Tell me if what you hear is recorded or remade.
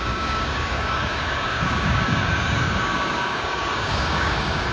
remade